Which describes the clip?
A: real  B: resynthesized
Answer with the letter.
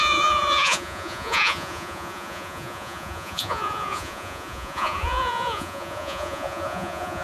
B